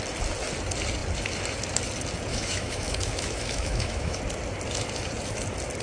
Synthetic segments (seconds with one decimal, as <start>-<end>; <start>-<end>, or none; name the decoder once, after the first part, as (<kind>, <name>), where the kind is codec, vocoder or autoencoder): 2.3-4.2 (autoencoder, DAC-VAE)